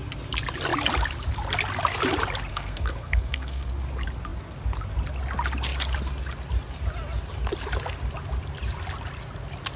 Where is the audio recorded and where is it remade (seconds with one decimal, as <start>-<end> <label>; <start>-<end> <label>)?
0.0-2.5 recorded; 2.5-3.7 remade; 3.7-9.8 recorded